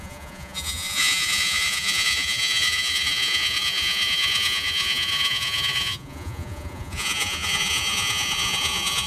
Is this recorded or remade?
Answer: remade